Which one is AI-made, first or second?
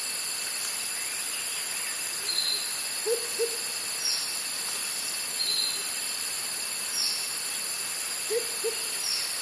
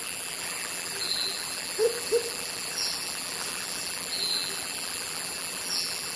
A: second